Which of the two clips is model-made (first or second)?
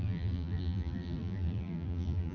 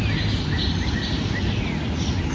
first